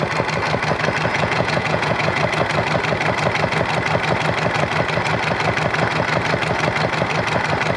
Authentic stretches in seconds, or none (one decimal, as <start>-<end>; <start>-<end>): 0.0-1.1; 2.2-7.8